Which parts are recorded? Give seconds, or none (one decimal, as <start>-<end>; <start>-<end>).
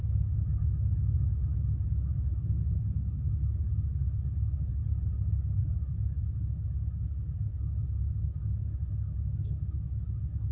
4.8-5.6